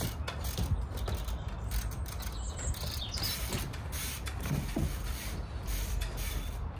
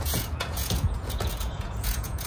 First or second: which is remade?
second